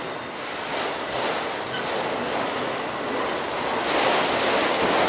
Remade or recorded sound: recorded